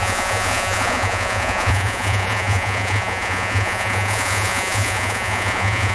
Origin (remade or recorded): remade